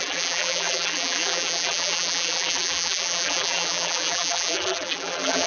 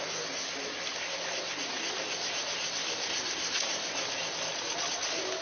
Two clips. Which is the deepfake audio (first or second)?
first